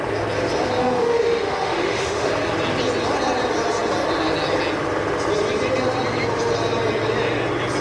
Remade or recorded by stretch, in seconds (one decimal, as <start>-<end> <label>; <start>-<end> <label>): 0.0-0.8 recorded; 0.8-2.3 remade; 2.3-7.8 recorded